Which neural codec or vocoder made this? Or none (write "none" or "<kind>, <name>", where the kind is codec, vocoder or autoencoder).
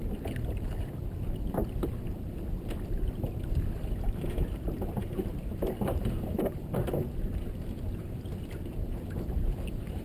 vocoder, BigVGAN v2